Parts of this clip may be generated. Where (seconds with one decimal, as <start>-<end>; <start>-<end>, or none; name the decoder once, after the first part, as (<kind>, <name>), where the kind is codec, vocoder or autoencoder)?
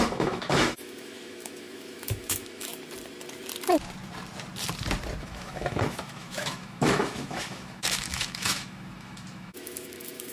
0.0-2.7 (autoencoder, DAC-VAE); 5.2-10.3